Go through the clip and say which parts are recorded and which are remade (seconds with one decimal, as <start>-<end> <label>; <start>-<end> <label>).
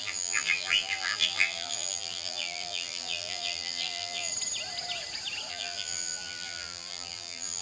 0.0-4.3 remade; 4.3-5.5 recorded; 5.5-7.6 remade